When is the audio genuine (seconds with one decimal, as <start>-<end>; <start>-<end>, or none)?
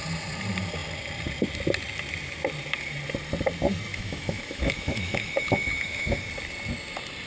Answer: 0.0-3.9; 6.2-7.3